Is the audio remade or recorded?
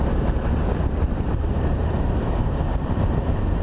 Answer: remade